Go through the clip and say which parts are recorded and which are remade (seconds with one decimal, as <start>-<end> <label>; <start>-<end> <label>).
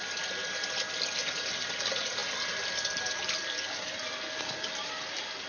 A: 0.0-5.5 recorded